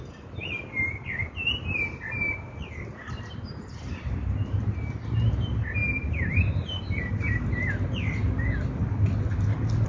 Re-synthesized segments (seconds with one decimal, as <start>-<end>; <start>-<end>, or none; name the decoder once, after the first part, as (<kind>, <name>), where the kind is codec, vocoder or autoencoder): none